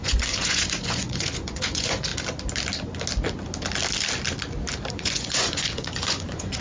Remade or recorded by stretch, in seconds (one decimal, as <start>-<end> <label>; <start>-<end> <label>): 0.0-2.1 remade; 2.1-4.9 recorded; 4.9-6.6 remade